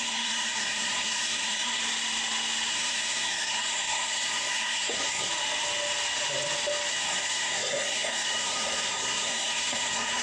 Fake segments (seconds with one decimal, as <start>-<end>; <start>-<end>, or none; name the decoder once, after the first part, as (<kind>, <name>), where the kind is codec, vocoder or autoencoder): 0.0-1.8 (codec, SNAC); 2.7-5.3; 6.9-10.2